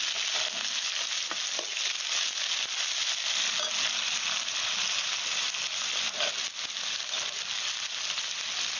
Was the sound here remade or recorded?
recorded